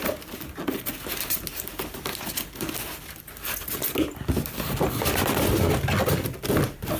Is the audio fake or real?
real